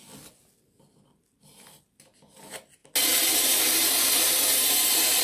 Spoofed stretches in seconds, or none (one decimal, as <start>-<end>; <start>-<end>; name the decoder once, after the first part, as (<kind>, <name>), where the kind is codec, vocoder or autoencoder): none